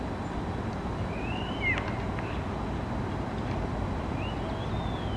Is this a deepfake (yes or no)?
no